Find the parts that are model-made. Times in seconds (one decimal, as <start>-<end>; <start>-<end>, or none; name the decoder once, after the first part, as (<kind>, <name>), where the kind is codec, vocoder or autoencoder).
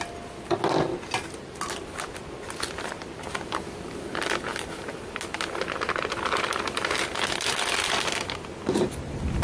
none